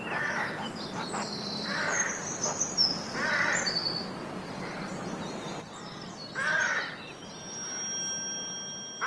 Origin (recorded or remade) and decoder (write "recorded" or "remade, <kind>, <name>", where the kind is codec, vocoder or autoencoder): recorded